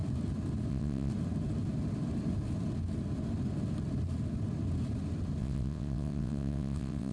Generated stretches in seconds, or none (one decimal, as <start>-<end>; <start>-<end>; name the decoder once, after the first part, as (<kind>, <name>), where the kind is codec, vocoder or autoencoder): 0.7-1.1 (vocoder, WaveNeXt); 5.4-7.1